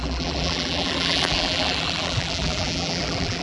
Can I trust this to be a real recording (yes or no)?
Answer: no